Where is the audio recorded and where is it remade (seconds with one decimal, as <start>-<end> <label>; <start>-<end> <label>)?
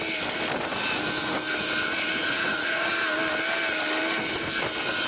0.0-2.2 recorded; 2.2-2.9 remade; 2.9-5.1 recorded